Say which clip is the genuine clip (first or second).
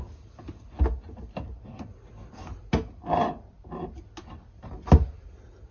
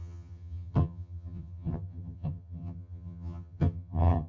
first